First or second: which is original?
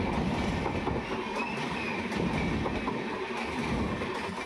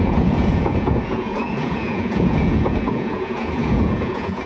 first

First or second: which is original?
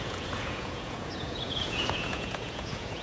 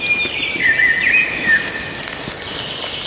second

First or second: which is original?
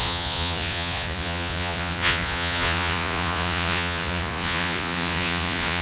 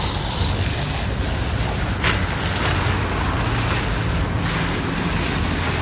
second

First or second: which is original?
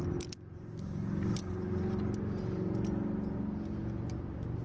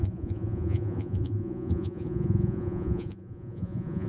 first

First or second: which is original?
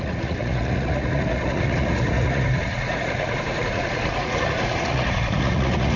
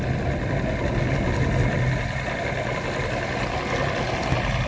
second